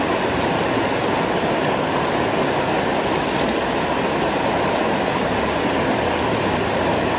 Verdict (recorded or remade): recorded